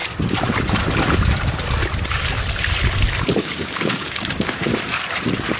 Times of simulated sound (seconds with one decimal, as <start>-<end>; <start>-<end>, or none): 3.4-4.7